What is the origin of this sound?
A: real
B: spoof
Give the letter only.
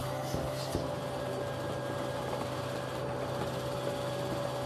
A